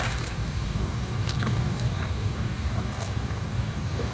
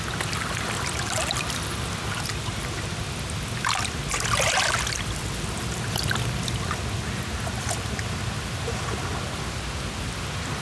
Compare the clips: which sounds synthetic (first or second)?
first